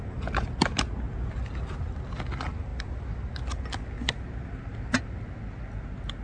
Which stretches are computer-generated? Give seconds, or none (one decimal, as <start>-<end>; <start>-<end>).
none

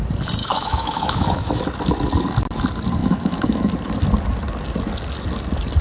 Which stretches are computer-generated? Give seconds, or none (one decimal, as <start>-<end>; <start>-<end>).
0.4-1.6; 3.0-3.7

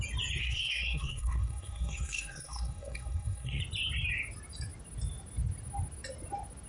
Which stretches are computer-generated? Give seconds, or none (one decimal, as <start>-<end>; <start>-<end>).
0.4-3.6

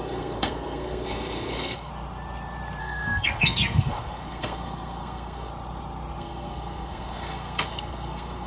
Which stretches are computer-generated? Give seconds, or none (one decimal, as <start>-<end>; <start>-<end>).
0.0-1.9; 2.8-5.5; 6.2-8.5